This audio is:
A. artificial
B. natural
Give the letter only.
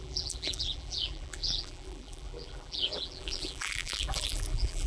A